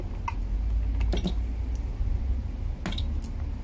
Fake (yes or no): no